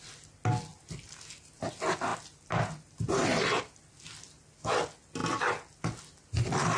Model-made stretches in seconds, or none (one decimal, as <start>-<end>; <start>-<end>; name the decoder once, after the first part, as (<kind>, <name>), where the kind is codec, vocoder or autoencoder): none